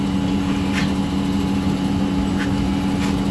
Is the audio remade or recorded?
recorded